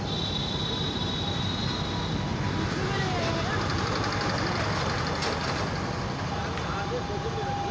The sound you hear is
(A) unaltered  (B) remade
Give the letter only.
A